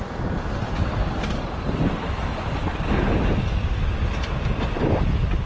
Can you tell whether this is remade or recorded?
recorded